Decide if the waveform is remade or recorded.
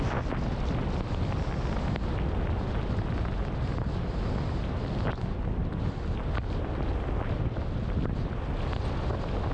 recorded